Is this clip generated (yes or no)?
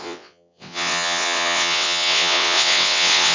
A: yes